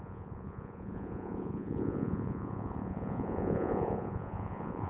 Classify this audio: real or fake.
fake